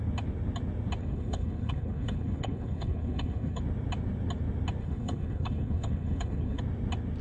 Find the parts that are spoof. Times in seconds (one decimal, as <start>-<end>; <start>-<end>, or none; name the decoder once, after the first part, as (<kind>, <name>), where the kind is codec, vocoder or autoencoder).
1.0-3.6 (codec, HILCodec); 4.8-6.6